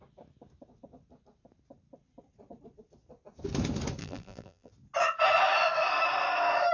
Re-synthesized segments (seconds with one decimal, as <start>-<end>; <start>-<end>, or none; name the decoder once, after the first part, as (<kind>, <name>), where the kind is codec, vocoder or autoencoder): 4.0-4.7 (vocoder, BigVGAN v2)

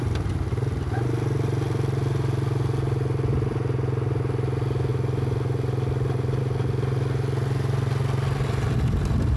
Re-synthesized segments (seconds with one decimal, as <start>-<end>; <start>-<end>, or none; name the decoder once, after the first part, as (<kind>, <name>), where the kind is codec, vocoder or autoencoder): none

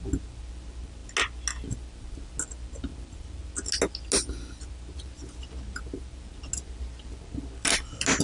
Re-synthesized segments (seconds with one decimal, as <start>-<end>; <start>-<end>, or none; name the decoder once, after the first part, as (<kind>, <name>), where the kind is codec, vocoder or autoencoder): none

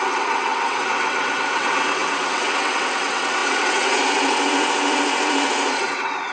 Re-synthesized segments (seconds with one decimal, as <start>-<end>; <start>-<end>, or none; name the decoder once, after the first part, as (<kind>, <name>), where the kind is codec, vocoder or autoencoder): 0.0-6.3 (vocoder, WaveNeXt)

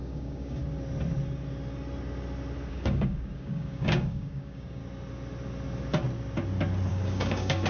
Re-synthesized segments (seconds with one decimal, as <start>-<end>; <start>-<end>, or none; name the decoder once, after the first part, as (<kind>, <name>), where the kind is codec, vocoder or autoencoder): 0.0-0.6 (codec, DAC); 2.7-4.8; 6.9-7.7